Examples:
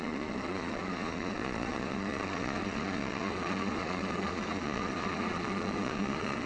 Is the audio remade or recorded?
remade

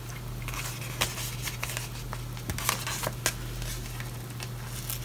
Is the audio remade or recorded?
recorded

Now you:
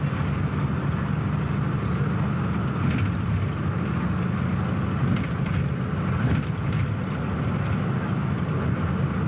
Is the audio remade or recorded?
recorded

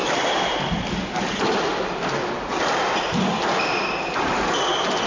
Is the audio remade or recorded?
recorded